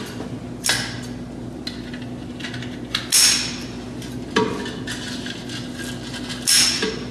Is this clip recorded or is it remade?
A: recorded